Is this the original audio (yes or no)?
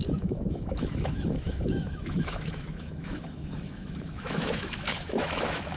no